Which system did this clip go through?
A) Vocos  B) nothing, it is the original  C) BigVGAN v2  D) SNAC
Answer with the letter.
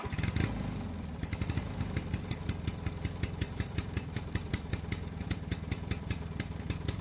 C